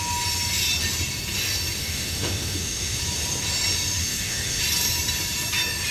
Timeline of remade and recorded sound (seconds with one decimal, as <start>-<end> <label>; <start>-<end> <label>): 0.0-1.8 recorded; 1.8-3.0 remade; 3.0-4.0 recorded; 4.0-4.6 remade; 4.6-5.9 recorded